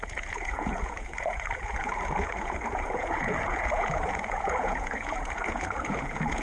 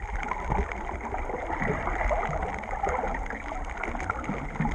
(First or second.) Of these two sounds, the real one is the second